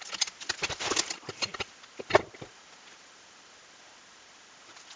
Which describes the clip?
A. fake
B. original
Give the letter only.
B